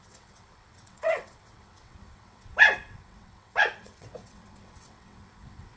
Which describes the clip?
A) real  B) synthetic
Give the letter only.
B